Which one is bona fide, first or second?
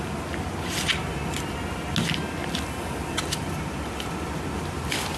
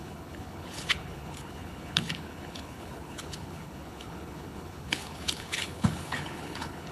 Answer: first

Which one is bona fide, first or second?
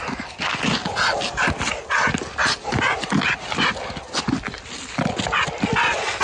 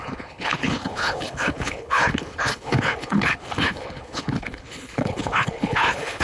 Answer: first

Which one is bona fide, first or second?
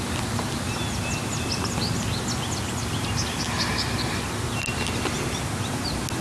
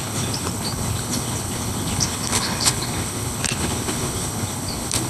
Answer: first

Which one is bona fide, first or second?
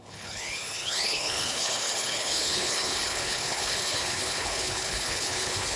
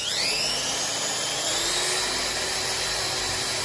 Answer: second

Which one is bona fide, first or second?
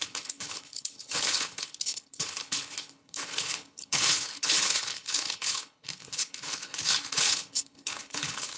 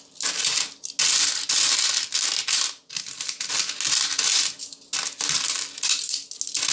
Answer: second